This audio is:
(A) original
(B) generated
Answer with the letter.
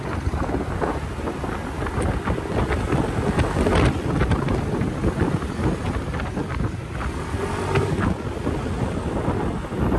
A